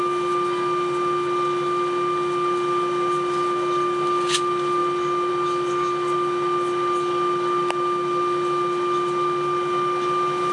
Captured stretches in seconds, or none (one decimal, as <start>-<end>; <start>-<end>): 0.0-10.5